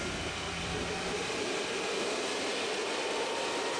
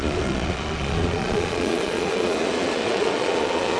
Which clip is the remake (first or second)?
second